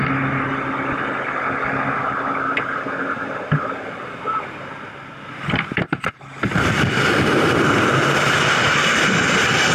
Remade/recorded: recorded